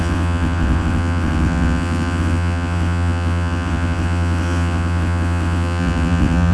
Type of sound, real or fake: fake